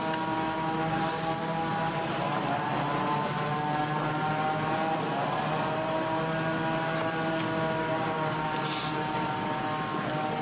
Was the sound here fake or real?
real